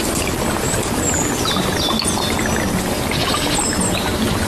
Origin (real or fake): real